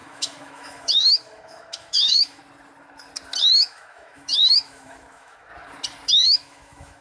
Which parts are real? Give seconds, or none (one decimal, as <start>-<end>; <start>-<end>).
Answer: 2.4-3.4; 5.5-6.1